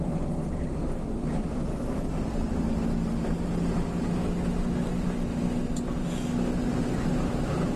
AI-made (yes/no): no